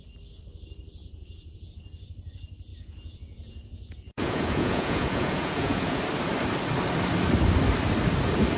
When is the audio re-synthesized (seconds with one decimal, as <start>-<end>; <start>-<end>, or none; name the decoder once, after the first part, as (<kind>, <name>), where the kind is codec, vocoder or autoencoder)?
1.0-1.7 (vocoder, Vocos); 2.7-6.0

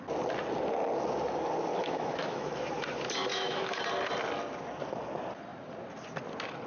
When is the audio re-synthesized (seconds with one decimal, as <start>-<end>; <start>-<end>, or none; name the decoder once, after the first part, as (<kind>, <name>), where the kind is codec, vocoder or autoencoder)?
1.7-2.5 (autoencoder, DAC-VAE); 3.3-3.8